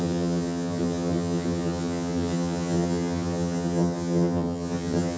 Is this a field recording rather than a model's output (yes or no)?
no